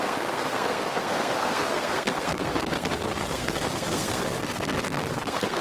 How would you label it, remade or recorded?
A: remade